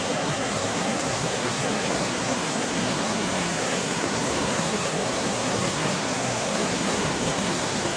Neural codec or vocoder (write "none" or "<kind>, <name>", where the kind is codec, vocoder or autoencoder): codec, SNAC